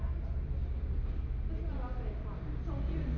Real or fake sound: real